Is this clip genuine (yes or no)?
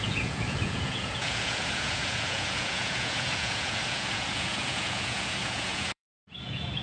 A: no